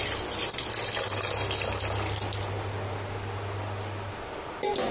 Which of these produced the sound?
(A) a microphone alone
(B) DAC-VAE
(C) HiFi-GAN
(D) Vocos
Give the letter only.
A